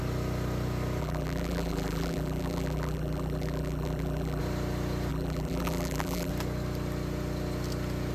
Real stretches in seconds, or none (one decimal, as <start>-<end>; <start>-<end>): 0.0-1.0; 4.4-5.1; 6.3-8.1